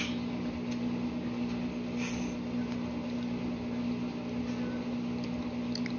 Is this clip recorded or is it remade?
recorded